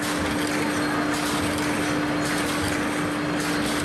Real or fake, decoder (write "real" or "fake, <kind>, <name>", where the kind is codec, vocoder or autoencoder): real